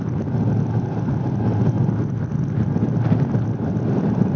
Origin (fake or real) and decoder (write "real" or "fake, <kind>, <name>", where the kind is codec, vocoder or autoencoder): real